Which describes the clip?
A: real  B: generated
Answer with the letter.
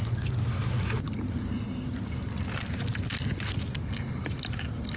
A